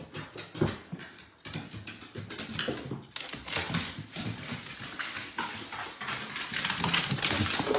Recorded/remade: recorded